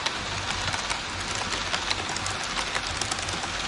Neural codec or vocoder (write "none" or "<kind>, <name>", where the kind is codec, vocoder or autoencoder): none